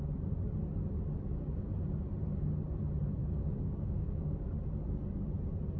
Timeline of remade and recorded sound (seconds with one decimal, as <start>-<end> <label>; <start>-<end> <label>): 0.0-3.2 recorded; 3.2-4.5 remade; 4.5-5.8 recorded